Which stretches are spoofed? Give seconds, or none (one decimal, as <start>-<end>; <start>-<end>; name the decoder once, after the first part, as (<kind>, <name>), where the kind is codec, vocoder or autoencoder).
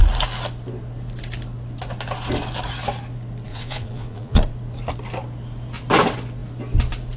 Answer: 3.5-4.4 (vocoder, Vocos)